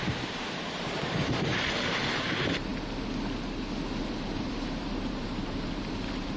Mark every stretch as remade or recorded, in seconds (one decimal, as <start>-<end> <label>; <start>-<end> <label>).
0.0-2.7 remade; 2.7-4.0 recorded; 4.0-6.4 remade

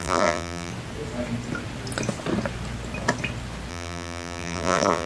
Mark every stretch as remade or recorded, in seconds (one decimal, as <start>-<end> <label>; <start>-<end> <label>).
0.0-0.7 remade; 0.7-3.7 recorded; 3.7-5.1 remade

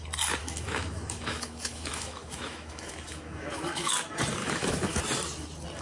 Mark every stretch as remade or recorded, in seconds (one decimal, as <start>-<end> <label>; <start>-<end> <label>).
0.0-0.4 recorded; 0.4-3.9 remade; 3.9-4.4 recorded; 4.4-5.0 remade; 5.0-5.8 recorded

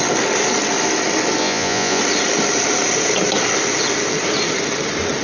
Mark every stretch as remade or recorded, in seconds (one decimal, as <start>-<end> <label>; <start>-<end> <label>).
0.0-1.4 recorded; 1.4-2.0 remade; 2.0-5.2 recorded

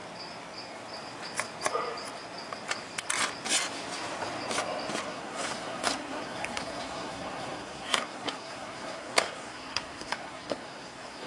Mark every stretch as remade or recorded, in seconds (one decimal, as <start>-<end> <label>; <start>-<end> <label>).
0.0-5.0 recorded; 5.0-11.3 remade